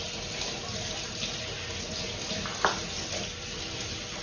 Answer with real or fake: real